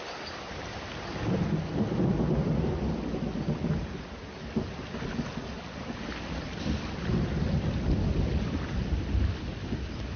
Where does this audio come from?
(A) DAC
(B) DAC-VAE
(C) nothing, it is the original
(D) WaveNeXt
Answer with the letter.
C